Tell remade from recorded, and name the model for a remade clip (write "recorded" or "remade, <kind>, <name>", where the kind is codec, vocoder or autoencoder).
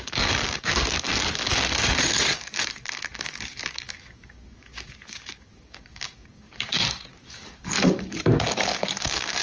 remade, codec, DAC